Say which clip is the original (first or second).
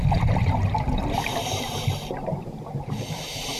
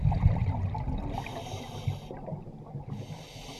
second